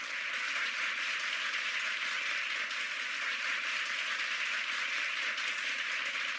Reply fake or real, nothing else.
real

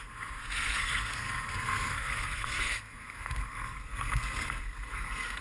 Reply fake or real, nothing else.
fake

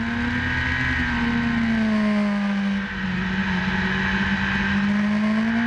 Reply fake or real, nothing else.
real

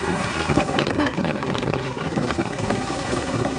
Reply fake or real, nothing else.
fake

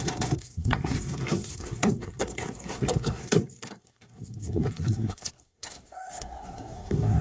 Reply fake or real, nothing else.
fake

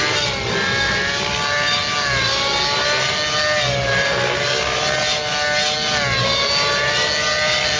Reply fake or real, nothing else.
real